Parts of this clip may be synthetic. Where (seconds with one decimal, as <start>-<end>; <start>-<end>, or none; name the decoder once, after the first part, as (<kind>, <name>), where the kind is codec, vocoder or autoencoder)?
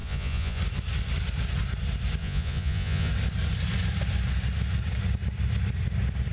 0.0-0.6 (vocoder, Vocos); 2.2-3.1